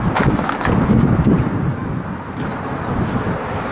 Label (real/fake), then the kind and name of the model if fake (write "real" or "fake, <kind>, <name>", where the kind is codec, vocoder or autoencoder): real